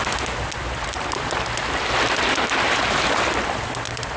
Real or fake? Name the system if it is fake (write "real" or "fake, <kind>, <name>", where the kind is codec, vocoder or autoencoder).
real